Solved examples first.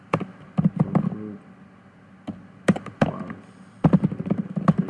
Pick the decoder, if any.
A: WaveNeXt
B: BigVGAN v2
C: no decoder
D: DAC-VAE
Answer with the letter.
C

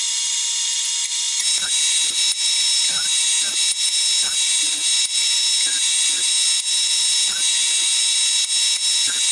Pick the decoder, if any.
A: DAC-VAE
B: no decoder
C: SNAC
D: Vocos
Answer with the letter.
B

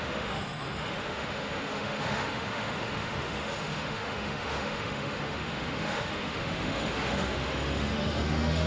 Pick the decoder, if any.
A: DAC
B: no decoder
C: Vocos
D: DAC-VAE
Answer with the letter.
D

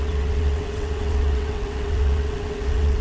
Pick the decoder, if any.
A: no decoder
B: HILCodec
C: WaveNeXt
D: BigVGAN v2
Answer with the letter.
C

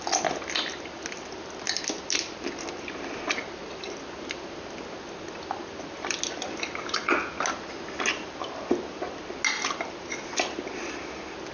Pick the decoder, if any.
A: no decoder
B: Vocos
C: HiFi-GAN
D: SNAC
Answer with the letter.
A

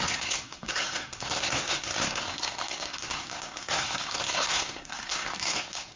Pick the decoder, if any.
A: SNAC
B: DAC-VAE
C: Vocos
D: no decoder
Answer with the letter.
A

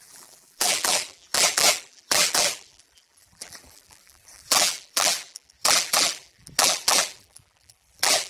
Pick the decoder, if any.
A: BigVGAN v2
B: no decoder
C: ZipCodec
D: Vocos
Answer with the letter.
A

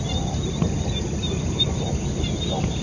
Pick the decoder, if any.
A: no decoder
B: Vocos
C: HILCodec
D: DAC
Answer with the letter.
A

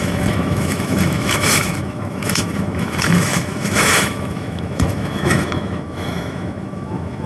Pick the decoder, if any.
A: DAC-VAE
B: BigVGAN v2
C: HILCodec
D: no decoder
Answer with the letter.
A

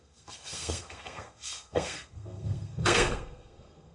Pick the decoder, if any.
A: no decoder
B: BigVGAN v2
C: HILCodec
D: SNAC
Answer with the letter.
D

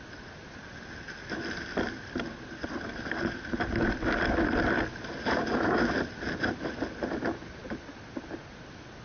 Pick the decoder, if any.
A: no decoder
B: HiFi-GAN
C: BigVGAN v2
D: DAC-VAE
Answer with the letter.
A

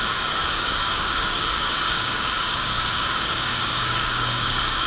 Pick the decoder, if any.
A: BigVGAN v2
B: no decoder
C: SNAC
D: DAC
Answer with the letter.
D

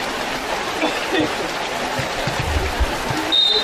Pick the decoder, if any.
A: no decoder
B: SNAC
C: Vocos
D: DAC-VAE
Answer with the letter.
A